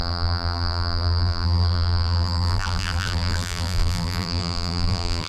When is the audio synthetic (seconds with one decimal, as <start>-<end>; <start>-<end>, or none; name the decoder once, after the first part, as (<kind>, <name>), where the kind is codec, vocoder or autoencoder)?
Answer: 0.0-5.3 (vocoder, BigVGAN v2)